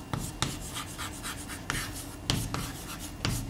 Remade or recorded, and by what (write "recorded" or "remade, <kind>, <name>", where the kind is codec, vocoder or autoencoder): recorded